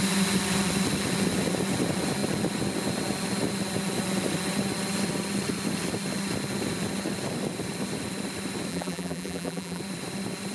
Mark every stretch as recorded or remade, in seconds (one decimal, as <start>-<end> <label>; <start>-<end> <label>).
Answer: 0.0-8.7 recorded; 8.7-9.8 remade; 9.8-10.5 recorded